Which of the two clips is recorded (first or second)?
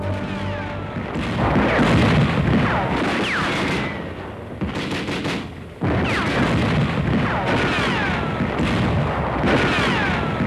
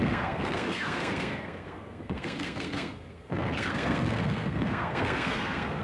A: first